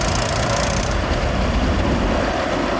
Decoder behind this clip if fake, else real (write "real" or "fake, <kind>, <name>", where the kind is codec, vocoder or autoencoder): real